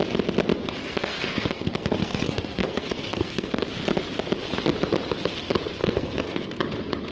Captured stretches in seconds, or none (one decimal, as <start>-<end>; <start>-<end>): 0.0-0.8; 3.7-5.8; 6.6-7.1